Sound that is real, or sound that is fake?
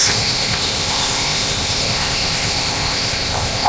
fake